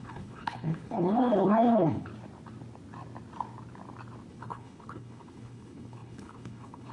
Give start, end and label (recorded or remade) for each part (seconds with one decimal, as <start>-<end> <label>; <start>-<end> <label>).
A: 0.0-2.1 remade; 2.1-4.3 recorded; 4.3-6.9 remade